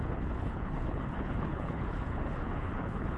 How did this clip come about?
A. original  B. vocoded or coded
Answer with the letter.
B